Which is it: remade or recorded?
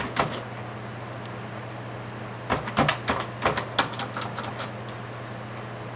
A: recorded